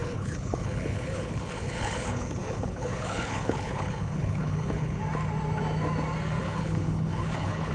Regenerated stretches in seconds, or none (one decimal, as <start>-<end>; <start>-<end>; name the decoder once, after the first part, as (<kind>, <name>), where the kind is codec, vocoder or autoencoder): 0.0-5.0 (codec, HILCodec); 6.4-7.7